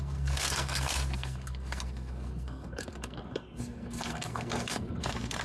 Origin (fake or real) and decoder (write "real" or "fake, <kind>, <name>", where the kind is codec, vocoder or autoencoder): fake, codec, SNAC